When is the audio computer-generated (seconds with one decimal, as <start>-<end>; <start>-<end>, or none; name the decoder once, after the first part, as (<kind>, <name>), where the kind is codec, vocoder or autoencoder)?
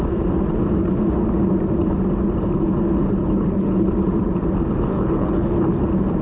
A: 3.2-3.9 (codec, HILCodec); 4.9-5.8